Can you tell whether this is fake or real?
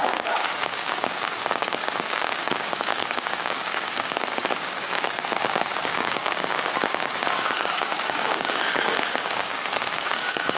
fake